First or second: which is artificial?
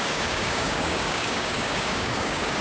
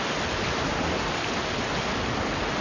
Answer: first